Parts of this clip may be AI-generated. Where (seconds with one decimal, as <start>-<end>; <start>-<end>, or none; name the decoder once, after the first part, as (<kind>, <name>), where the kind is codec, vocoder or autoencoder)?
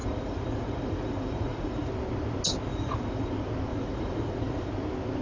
0.0-1.9 (vocoder, Vocos); 2.7-3.3; 3.7-4.7